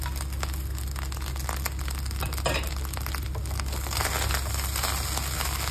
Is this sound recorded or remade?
recorded